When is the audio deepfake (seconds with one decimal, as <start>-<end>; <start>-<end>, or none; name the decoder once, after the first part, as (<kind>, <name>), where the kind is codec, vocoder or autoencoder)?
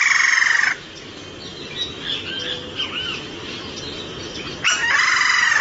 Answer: none